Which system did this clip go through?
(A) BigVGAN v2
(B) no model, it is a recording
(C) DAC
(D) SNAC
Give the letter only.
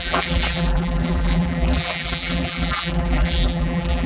A